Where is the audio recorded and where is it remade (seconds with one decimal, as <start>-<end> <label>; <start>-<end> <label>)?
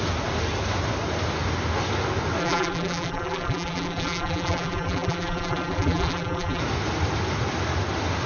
0.0-2.4 recorded; 2.4-6.6 remade; 6.6-8.3 recorded